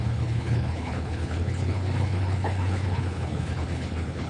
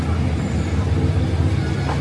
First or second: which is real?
second